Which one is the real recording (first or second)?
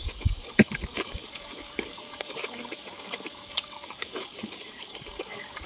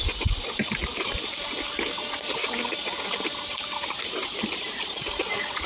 second